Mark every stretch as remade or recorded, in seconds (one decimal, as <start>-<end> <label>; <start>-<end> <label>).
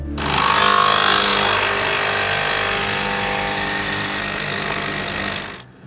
0.0-4.2 recorded; 4.2-5.9 remade